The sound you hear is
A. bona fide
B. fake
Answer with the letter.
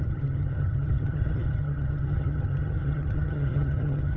B